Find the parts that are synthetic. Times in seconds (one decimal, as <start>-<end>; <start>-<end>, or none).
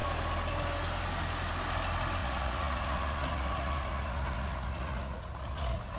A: 2.2-6.0